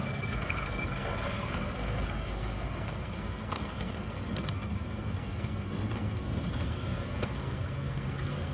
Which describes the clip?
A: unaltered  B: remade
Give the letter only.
B